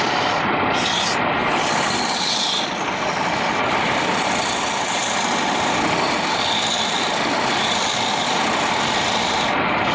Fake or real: real